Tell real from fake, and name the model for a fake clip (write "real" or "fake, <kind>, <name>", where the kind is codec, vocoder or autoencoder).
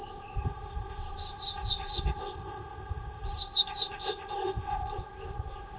fake, codec, ZipCodec